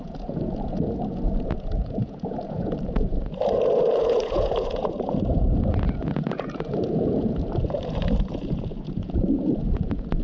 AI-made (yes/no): yes